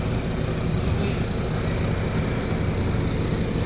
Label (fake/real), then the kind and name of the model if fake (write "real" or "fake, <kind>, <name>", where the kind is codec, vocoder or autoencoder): real